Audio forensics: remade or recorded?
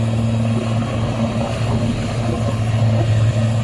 recorded